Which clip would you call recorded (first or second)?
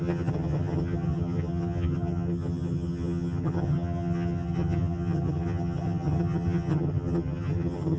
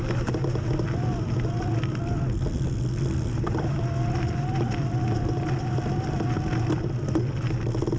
second